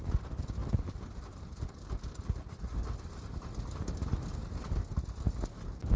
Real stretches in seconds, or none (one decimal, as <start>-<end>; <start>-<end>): 0.0-6.0